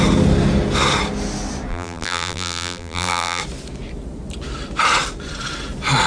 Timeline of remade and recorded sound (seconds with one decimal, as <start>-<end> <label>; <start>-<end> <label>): 0.0-1.7 recorded; 1.7-3.4 remade; 3.4-6.1 recorded